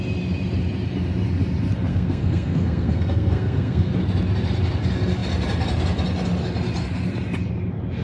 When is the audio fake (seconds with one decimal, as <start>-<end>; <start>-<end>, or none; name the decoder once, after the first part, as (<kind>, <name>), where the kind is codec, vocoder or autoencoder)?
1.9-3.9 (codec, SNAC)